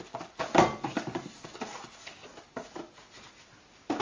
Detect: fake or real real